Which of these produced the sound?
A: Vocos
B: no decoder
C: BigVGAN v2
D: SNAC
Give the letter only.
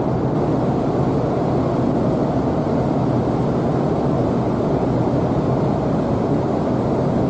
B